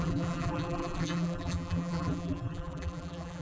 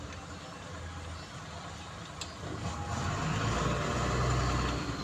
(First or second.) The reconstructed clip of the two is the first